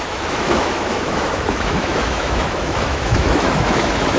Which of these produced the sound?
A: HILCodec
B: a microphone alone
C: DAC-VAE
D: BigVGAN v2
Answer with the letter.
C